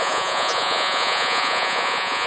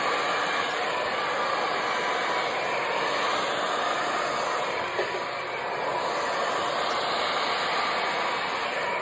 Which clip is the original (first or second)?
second